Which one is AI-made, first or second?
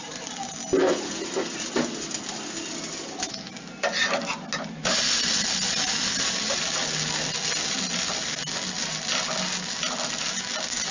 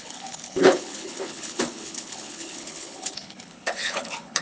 second